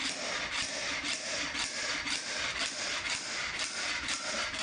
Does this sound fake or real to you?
real